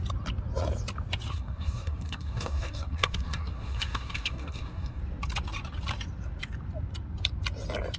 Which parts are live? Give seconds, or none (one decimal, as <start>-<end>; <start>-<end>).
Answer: 0.0-1.3; 5.0-8.0